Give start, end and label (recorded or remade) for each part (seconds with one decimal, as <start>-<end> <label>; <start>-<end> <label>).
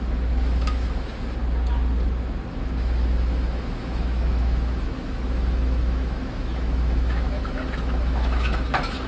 0.0-1.4 remade; 1.4-2.5 recorded; 2.5-9.1 remade